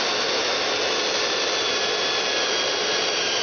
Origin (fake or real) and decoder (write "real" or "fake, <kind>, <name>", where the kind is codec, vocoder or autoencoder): real